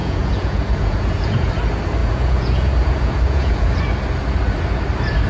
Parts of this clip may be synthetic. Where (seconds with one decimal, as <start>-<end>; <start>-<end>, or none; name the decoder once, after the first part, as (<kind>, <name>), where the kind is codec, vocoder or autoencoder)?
0.0-1.5 (vocoder, Vocos); 2.0-3.8